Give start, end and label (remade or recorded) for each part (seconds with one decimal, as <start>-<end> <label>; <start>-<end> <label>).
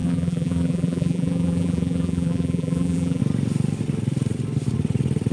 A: 0.0-3.2 remade; 3.2-5.3 recorded